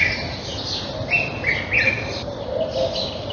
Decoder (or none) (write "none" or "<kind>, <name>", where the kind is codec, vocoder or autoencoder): none